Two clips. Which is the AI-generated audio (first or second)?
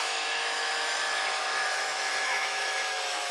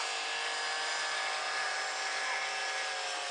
first